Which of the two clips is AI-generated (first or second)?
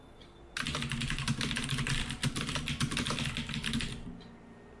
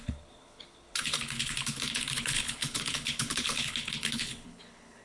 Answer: second